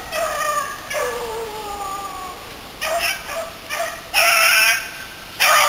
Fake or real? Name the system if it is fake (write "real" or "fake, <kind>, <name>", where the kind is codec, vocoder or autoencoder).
fake, vocoder, BigVGAN v2